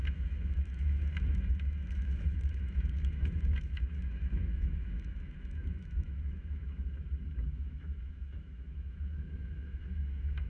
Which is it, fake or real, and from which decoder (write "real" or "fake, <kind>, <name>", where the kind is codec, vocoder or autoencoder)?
fake, autoencoder, DAC-VAE